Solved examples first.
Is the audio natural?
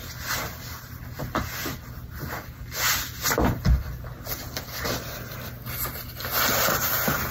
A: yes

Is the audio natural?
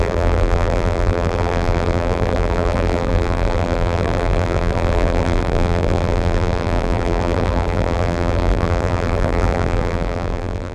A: no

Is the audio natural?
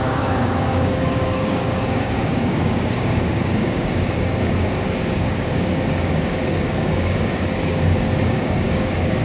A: no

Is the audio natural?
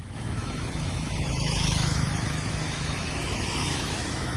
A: no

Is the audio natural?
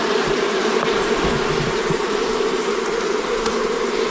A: no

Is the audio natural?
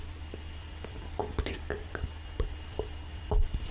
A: no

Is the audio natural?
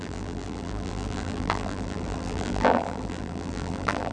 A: no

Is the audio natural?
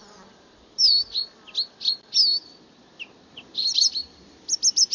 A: yes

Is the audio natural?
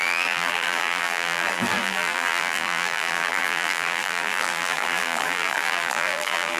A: no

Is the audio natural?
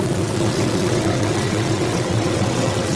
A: no